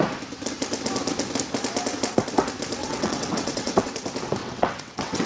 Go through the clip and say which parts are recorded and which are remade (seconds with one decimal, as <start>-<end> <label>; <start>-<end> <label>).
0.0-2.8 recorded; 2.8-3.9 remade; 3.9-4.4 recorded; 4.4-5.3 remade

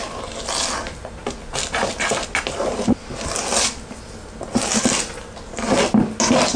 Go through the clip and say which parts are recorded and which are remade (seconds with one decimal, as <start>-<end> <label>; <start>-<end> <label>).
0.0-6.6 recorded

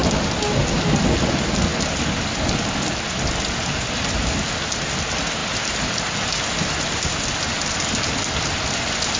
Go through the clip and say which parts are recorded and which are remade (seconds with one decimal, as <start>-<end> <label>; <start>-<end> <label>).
0.0-9.2 recorded

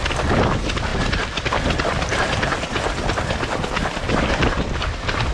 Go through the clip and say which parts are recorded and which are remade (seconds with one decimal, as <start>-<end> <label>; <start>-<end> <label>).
0.0-5.3 recorded